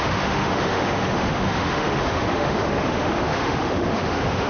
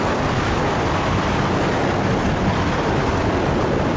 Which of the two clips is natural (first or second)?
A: second